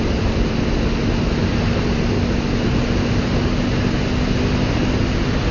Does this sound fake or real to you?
real